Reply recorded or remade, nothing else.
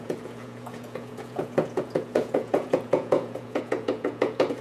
remade